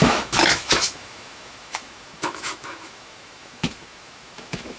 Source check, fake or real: fake